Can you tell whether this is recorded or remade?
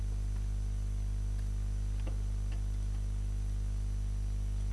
recorded